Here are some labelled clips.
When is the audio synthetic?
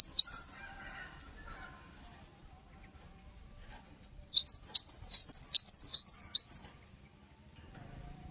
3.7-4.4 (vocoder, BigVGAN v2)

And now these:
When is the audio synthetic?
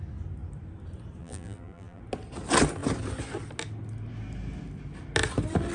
1.2-2.0 (vocoder, BigVGAN v2)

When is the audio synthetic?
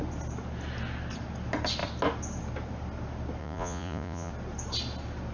3.4-4.3 (vocoder, Vocos)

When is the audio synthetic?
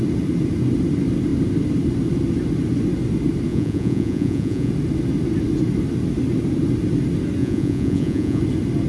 3.5-4.7 (vocoder, Vocos); 7.4-8.4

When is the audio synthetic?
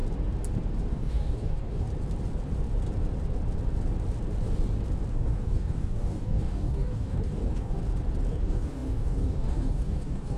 0.9-1.9 (codec, DAC); 5.1-7.8; 8.3-10.4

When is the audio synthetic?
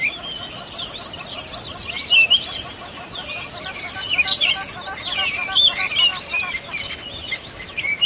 1.8-4.0 (vocoder, BigVGAN v2)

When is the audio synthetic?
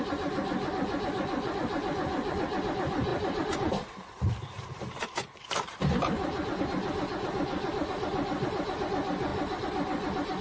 3.1-6.6 (vocoder, BigVGAN v2)